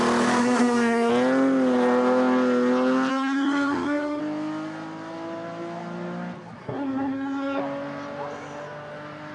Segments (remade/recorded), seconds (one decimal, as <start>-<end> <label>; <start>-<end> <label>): 0.0-0.4 recorded; 0.4-1.1 remade; 1.1-3.1 recorded; 3.1-4.2 remade; 4.2-6.6 recorded; 6.6-7.6 remade; 7.6-9.3 recorded